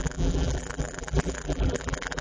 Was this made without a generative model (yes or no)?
no